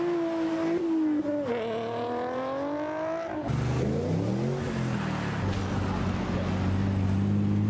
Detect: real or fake real